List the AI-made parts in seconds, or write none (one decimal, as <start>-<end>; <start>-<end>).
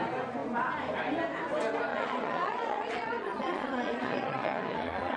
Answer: 1.9-5.2